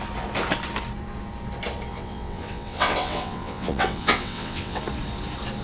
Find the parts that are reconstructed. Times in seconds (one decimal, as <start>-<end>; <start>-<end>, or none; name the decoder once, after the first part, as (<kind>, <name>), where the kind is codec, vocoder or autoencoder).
1.9-4.8 (vocoder, WaveNeXt)